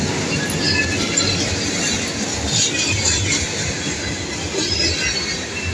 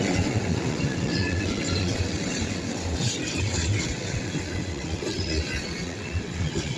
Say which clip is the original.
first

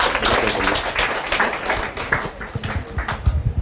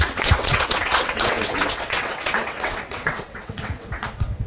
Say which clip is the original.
first